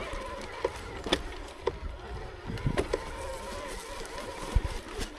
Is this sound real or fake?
real